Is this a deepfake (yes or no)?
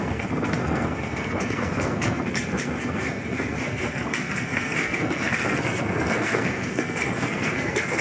yes